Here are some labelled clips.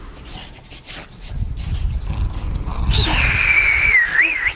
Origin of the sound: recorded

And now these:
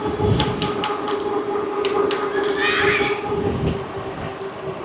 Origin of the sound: recorded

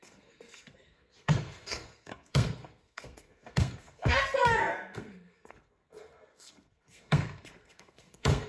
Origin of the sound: remade